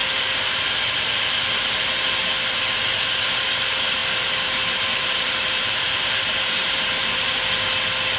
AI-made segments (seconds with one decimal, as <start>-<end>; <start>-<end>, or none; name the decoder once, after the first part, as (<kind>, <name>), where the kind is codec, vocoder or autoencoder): 0.0-0.6 (vocoder, BigVGAN v2); 4.0-7.3